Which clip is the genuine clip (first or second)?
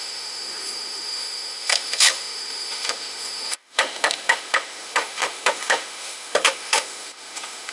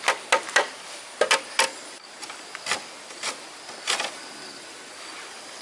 second